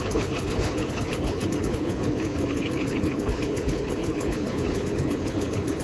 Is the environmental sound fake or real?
fake